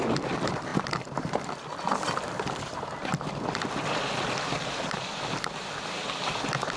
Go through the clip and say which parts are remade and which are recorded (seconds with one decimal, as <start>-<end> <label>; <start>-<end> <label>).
0.0-0.7 recorded; 0.7-1.4 remade; 1.4-6.8 recorded